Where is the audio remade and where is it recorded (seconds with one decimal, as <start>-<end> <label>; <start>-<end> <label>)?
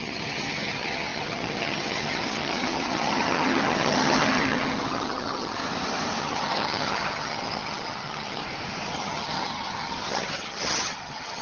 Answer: 0.0-5.6 remade; 5.6-6.2 recorded; 6.2-8.4 remade; 8.4-8.9 recorded; 8.9-11.4 remade